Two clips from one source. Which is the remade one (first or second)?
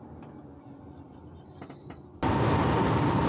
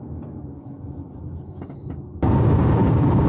second